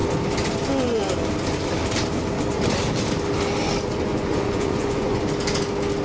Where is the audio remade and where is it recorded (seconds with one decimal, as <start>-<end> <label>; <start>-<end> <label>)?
0.0-4.1 recorded; 4.1-5.2 remade; 5.2-6.0 recorded